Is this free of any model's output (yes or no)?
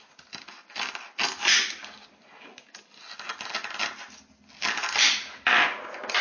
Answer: yes